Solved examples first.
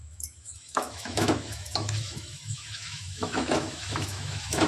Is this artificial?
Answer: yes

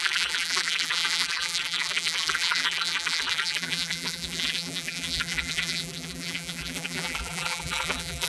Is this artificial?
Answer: yes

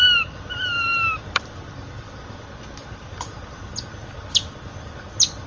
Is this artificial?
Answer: no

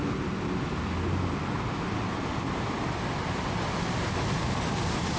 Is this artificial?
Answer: no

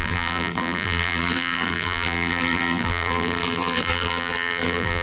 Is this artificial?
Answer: yes